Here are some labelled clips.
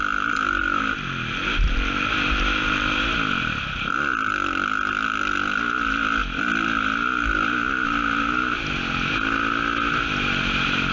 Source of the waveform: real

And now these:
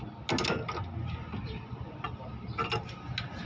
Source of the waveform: real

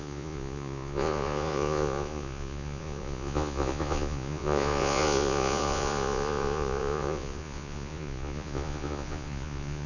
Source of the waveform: fake